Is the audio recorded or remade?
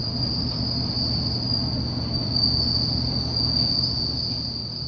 recorded